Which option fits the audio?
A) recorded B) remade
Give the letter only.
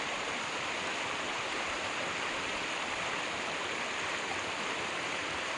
A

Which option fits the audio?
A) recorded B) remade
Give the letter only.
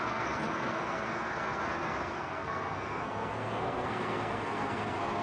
B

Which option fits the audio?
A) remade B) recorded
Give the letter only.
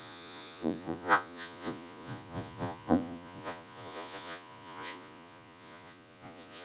A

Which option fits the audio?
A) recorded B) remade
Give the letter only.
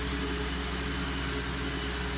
A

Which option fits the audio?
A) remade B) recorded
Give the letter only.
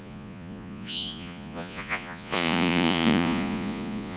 A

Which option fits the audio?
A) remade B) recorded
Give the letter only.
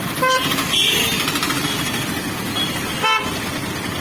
B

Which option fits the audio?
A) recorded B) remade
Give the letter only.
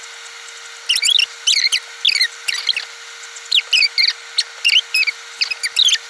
A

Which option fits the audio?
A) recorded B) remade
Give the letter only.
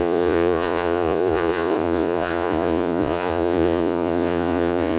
B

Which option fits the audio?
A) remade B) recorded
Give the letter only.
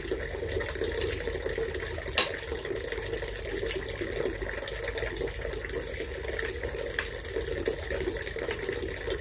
B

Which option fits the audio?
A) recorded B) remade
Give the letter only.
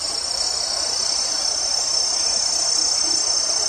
A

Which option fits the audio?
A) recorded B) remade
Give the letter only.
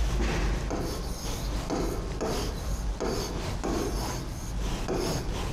A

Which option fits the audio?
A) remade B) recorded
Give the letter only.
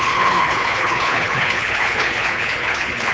A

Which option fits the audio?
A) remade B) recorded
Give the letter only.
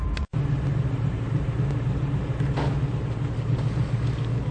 B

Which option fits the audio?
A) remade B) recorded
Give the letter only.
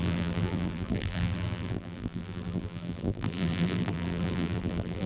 A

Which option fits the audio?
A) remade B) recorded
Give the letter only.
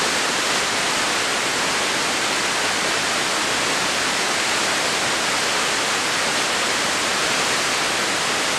B